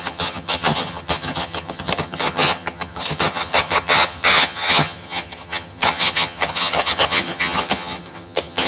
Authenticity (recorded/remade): remade